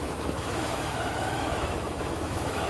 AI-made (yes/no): yes